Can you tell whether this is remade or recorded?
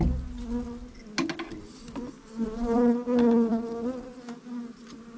recorded